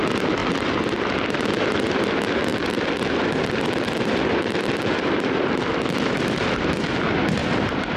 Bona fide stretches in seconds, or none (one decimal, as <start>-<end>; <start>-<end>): 0.0-0.4; 1.1-2.5; 7.0-7.4